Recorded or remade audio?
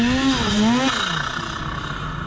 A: recorded